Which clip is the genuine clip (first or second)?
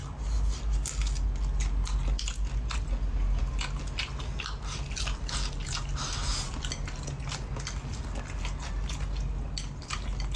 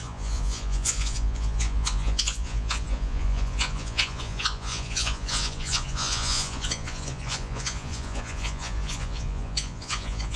first